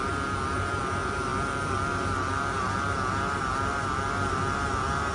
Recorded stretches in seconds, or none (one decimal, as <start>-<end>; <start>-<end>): 0.0-5.1